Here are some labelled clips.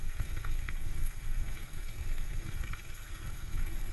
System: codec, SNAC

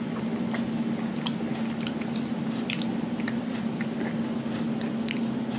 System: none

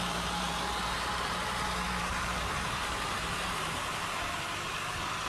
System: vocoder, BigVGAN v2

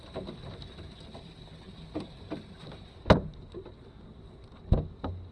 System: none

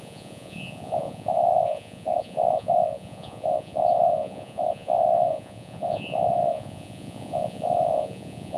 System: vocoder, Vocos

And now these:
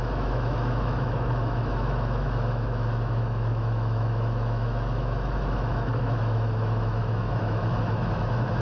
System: autoencoder, DAC-VAE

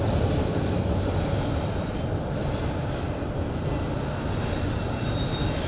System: none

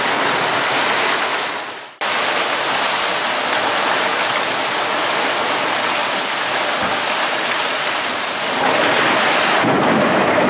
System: none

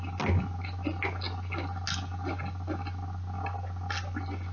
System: none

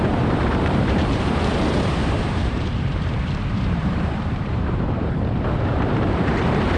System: vocoder, BigVGAN v2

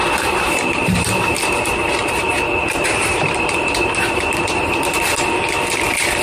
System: vocoder, BigVGAN v2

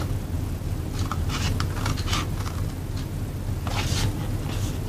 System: none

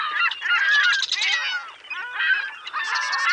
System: none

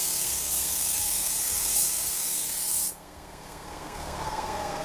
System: codec, SNAC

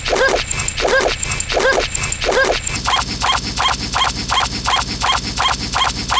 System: none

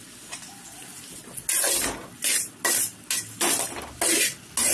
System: none